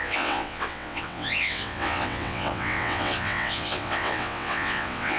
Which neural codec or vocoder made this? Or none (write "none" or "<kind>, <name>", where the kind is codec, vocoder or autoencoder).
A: vocoder, WaveNeXt